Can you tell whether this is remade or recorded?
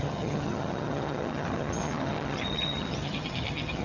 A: remade